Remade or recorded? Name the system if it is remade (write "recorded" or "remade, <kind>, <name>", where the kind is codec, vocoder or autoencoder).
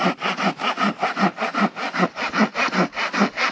recorded